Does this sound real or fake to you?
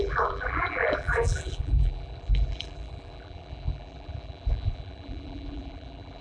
fake